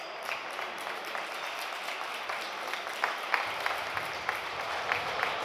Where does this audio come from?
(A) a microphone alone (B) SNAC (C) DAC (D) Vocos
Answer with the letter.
A